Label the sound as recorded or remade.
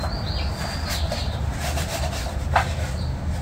recorded